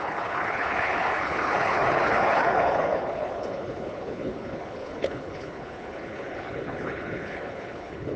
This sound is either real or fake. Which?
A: fake